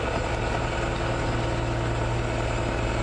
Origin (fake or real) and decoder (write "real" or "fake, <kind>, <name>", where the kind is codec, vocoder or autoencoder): real